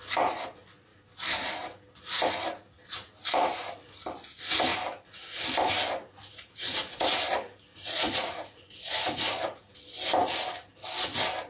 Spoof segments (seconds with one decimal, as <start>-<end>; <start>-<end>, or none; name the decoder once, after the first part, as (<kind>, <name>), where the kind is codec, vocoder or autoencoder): 7.7-9.7 (vocoder, Vocos)